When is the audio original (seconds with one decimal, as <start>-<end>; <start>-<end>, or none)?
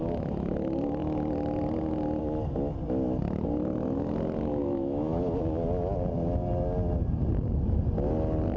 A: 0.0-4.6; 5.2-8.6